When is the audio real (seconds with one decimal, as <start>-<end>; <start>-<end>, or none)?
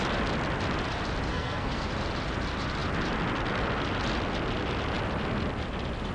0.0-1.3; 1.9-6.1